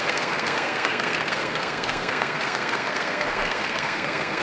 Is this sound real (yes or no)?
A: no